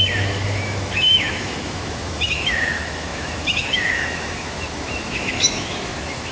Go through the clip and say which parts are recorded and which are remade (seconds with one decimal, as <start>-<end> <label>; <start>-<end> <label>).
0.0-6.3 remade